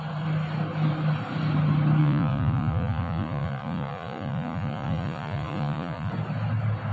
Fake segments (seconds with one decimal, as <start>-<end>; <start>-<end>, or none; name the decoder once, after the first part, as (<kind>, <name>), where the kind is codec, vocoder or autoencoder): 2.0-6.1 (vocoder, Vocos)